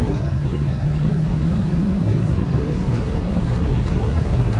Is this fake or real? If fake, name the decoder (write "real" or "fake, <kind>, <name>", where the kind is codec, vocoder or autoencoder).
fake, codec, SNAC